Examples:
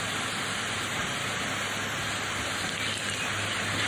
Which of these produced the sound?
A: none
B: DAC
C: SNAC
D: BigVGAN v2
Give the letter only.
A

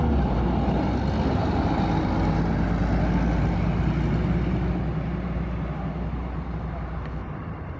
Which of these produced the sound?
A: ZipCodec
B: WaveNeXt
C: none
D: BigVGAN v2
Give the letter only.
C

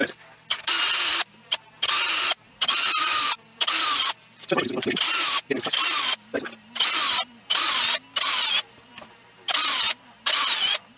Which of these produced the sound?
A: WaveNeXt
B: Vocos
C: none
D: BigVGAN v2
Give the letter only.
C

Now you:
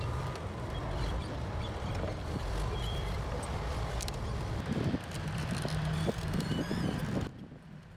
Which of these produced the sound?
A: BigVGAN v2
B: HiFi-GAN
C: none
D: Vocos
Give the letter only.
C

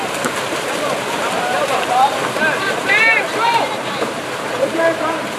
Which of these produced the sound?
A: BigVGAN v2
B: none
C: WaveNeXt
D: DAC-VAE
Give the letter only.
A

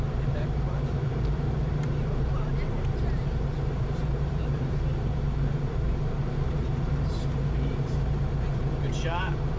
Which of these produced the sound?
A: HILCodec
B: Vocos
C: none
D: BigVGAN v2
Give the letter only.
D